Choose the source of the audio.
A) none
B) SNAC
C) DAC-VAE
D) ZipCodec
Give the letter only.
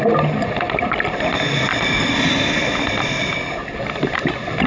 A